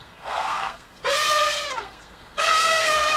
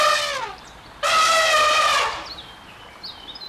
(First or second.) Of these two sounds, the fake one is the first